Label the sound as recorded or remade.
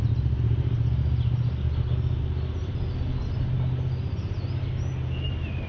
recorded